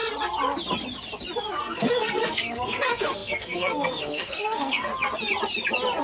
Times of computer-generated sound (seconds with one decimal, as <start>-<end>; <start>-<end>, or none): 1.6-4.9